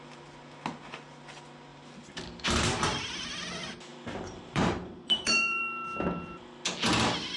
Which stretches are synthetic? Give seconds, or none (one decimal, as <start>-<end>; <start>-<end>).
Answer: 1.7-3.0; 3.9-5.6